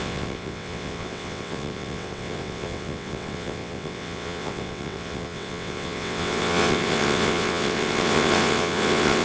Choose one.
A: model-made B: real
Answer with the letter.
A